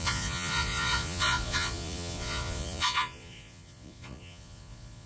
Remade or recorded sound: remade